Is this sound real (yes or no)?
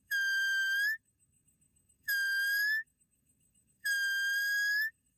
no